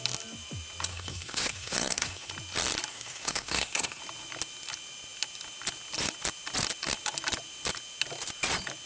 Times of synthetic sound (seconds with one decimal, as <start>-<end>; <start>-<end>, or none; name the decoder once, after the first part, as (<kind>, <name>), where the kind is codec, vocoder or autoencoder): 0.9-2.3 (codec, SNAC); 2.9-4.0